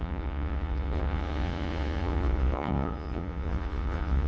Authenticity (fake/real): fake